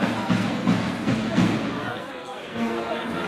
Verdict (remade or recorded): remade